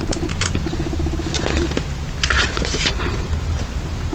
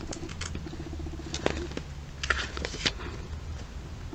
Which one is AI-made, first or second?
first